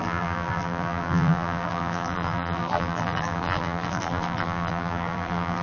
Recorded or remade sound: remade